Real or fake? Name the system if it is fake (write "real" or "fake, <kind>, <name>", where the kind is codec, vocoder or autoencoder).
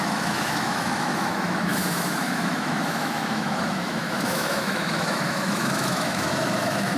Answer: fake, autoencoder, DAC-VAE